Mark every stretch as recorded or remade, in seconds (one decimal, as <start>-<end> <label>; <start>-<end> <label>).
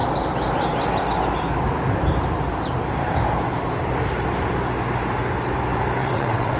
0.0-6.0 recorded; 6.0-6.6 remade